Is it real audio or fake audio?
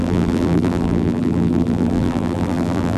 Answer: fake